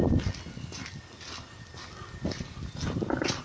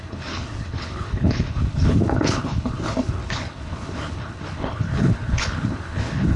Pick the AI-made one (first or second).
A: second